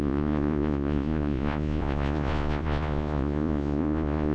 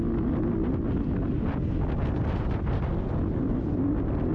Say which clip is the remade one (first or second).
first